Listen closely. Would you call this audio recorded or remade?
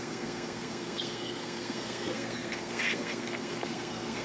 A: remade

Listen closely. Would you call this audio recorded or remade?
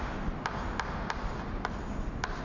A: recorded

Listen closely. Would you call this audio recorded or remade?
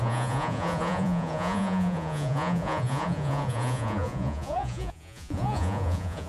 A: remade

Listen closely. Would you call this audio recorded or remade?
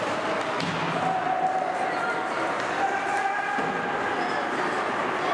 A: recorded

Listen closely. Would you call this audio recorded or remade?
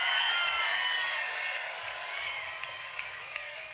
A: remade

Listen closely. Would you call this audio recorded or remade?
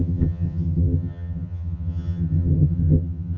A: remade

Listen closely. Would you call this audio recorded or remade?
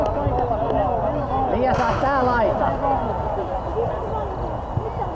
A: recorded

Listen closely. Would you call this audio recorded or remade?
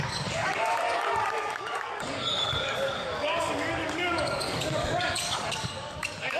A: remade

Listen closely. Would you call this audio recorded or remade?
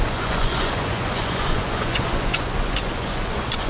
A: remade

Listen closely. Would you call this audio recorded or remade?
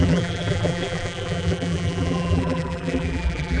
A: remade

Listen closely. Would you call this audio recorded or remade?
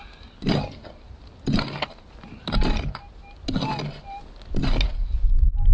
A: recorded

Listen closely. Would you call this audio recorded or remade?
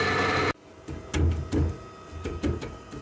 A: recorded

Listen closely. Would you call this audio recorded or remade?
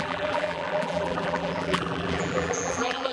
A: remade